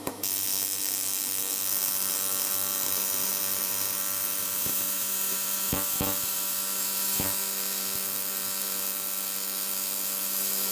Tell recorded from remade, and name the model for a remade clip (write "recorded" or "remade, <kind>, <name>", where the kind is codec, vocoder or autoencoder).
remade, autoencoder, DAC-VAE